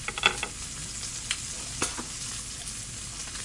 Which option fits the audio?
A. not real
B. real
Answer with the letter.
B